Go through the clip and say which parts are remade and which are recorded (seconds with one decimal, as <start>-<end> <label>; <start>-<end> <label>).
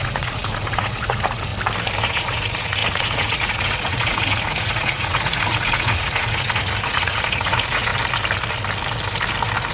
0.0-1.5 remade; 1.5-2.0 recorded; 2.0-7.9 remade; 7.9-9.7 recorded